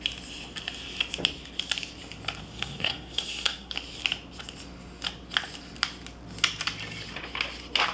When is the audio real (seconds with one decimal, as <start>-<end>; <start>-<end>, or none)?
0.0-2.5; 3.7-7.9